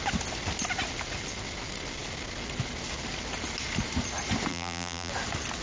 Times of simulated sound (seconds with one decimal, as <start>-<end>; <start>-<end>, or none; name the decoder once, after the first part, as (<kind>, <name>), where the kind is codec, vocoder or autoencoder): 4.5-5.1 (vocoder, BigVGAN v2)